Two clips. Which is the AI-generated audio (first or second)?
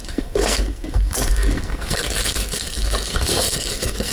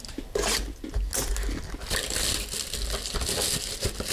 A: first